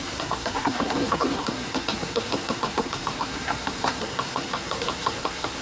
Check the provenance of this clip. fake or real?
fake